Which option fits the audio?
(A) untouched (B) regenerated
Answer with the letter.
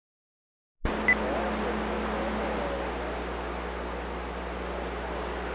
A